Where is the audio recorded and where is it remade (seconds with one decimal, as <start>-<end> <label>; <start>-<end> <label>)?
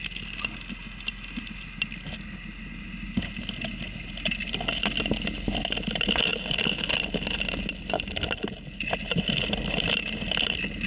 0.0-10.9 recorded